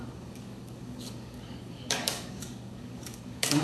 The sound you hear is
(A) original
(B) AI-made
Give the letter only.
B